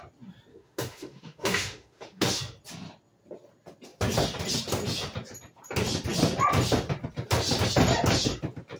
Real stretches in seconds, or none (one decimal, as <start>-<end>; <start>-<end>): 0.0-0.5; 2.4-8.8